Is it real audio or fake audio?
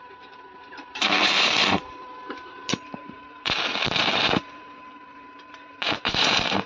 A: fake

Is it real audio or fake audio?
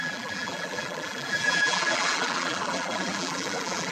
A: fake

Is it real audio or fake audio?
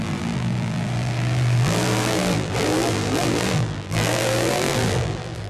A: fake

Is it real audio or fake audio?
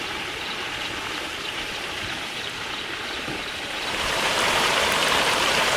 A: fake